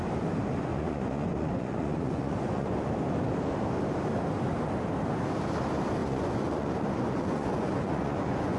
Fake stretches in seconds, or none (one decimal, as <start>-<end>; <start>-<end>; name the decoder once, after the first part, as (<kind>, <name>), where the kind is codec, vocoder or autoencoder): 0.7-2.9 (vocoder, Vocos); 6.0-8.6